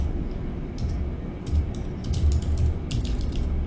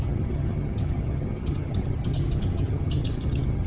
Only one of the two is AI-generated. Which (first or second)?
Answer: second